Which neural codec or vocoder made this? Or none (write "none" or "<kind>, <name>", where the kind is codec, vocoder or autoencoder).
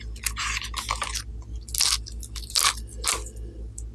none